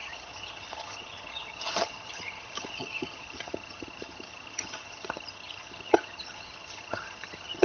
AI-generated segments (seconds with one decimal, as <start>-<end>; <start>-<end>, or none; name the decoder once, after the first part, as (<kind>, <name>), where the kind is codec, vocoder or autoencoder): 0.0-7.6 (vocoder, HiFi-GAN)